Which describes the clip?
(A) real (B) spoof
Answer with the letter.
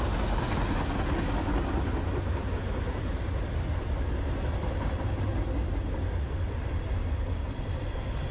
A